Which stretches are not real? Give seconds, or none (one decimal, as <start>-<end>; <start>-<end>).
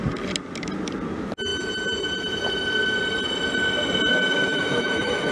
4.1-5.3